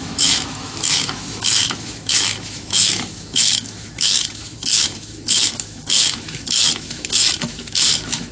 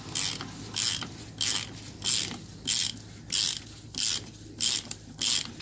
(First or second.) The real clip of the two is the second